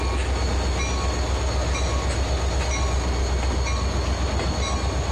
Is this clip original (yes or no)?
yes